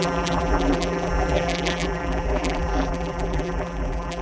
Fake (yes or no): yes